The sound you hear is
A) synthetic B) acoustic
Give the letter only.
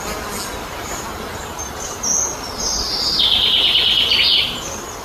B